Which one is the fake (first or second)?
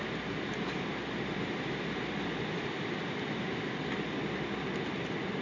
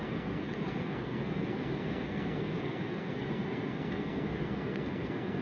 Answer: second